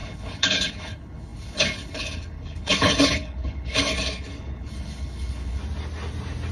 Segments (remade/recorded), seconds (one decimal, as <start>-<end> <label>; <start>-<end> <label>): 0.0-5.6 remade; 5.6-6.5 recorded